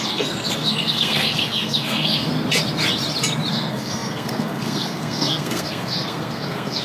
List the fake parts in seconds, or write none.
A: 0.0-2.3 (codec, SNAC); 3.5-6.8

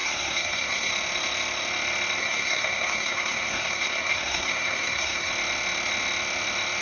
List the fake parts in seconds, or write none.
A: 0.0-0.9 (codec, SNAC); 2.2-5.3

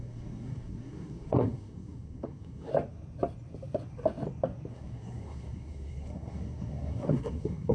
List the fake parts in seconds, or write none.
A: 0.0-2.7 (codec, SNAC); 4.7-7.7

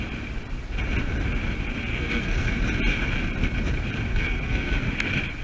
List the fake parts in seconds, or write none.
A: 1.9-2.6 (codec, SNAC); 4.1-4.9

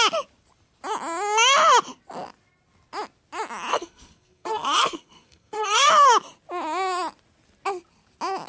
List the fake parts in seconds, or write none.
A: 3.7-5.9 (codec, SNAC)

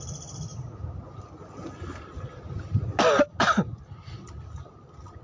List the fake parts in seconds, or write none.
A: none

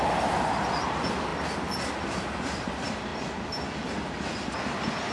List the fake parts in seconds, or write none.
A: none